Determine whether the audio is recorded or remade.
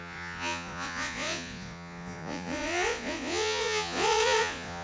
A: remade